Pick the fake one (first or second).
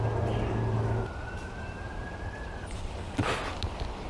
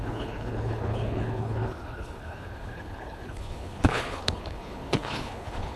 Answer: second